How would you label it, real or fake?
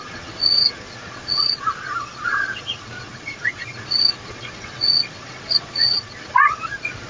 fake